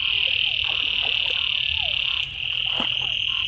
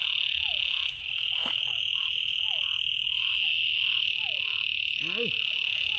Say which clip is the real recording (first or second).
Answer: first